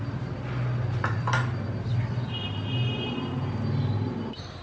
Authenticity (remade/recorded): recorded